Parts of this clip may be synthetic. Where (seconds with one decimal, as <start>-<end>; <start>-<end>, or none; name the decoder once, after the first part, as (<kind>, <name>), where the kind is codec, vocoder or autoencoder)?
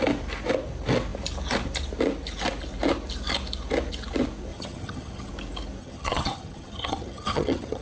4.5-5.3 (vocoder, HiFi-GAN); 5.8-7.8